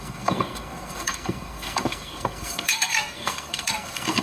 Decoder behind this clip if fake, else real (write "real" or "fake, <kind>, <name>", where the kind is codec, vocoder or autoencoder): fake, codec, SNAC